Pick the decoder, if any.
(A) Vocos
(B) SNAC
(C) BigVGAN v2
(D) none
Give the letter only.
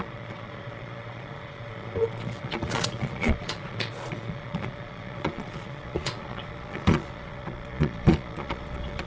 A